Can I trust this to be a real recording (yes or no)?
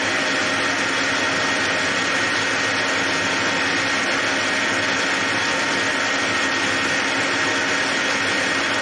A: yes